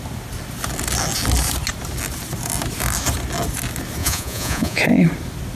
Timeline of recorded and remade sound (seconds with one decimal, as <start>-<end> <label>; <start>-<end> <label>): 0.0-4.0 recorded; 4.0-4.8 remade; 4.8-5.5 recorded